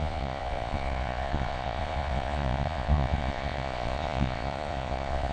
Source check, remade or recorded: remade